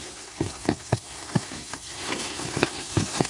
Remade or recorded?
remade